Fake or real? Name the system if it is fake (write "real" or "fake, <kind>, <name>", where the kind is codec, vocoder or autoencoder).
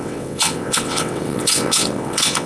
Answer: fake, vocoder, WaveNeXt